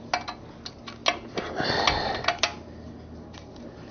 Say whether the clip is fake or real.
real